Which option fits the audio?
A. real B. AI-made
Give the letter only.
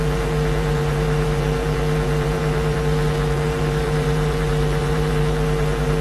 B